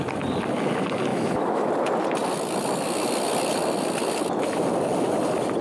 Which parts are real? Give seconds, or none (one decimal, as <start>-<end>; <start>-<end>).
0.0-1.1; 1.7-5.6